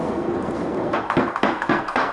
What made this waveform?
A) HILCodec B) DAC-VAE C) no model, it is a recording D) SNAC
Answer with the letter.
D